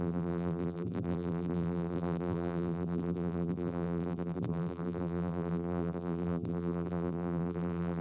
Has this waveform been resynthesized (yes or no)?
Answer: yes